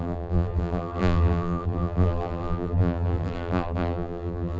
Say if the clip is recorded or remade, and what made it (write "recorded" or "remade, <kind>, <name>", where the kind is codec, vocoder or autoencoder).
remade, vocoder, BigVGAN v2